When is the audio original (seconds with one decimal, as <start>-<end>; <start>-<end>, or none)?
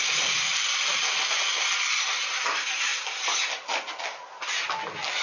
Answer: 0.0-5.2